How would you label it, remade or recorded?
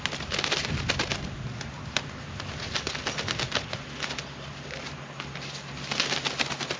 recorded